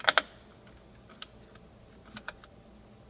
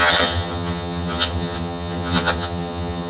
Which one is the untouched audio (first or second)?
first